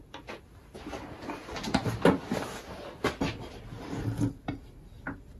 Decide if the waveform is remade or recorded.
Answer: recorded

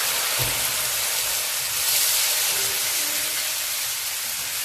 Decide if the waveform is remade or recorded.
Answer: recorded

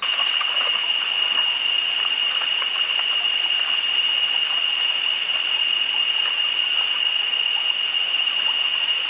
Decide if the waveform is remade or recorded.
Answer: recorded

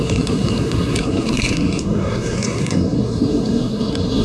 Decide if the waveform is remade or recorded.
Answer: remade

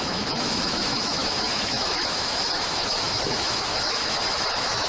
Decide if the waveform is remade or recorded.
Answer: remade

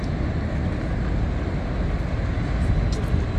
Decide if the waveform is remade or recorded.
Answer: recorded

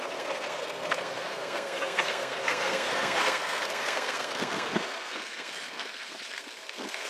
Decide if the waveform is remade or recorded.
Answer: remade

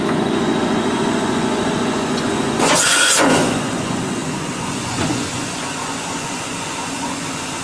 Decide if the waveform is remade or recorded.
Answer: remade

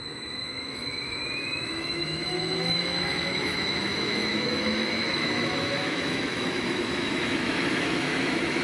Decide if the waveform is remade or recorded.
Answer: remade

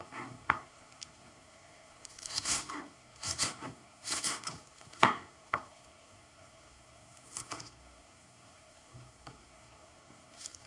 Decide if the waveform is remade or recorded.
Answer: remade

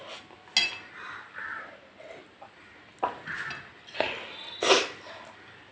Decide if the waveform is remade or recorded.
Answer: recorded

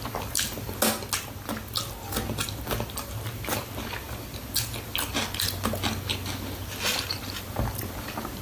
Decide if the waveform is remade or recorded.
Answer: recorded